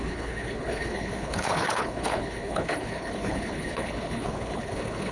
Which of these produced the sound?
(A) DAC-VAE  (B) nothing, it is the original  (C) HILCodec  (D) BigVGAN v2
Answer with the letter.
C